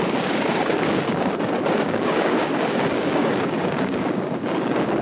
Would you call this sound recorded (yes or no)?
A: no